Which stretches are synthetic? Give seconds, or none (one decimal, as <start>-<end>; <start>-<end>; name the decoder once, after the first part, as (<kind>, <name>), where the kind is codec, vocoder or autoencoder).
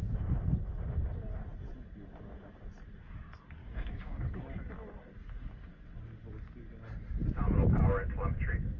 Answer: 3.6-4.2 (codec, DAC)